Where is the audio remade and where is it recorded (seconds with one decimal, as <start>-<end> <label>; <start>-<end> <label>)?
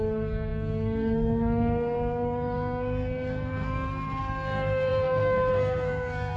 0.0-6.4 remade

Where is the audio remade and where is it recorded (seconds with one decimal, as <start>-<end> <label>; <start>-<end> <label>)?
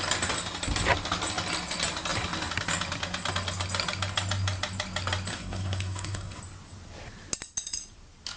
0.0-5.3 recorded; 5.3-6.4 remade; 6.4-8.4 recorded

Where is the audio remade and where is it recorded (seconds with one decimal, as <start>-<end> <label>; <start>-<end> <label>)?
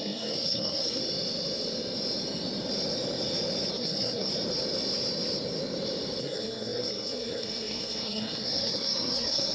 0.0-1.0 remade; 1.0-3.7 recorded; 3.7-4.3 remade; 4.3-6.2 recorded; 6.2-9.5 remade